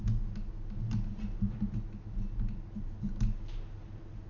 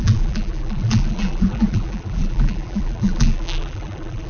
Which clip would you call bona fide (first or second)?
first